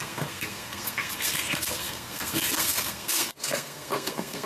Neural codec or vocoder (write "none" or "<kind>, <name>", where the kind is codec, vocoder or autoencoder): codec, SNAC